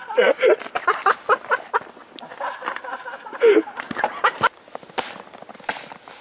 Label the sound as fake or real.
real